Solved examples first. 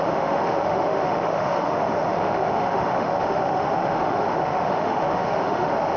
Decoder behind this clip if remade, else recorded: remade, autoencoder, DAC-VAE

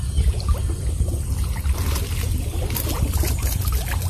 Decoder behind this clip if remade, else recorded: recorded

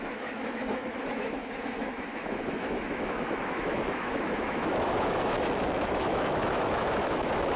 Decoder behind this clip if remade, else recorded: remade, autoencoder, DAC-VAE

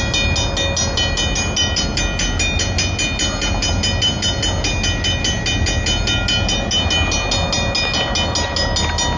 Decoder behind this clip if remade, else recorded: recorded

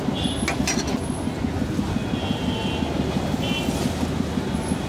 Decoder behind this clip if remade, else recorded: recorded